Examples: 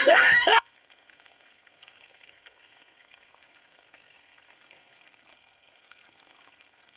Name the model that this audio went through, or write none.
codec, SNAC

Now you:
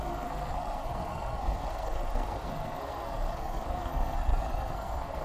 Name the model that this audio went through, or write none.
codec, SNAC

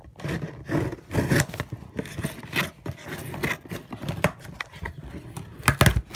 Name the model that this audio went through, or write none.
none